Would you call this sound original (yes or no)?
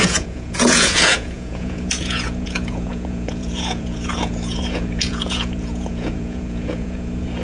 no